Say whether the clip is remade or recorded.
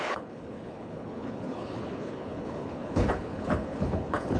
remade